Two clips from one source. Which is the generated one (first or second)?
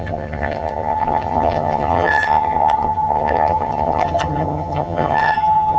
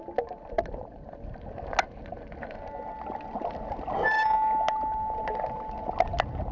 first